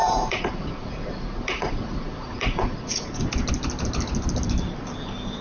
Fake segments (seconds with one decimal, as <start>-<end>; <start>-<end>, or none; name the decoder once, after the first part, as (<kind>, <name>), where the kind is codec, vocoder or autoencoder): 0.0-3.2 (vocoder, Vocos)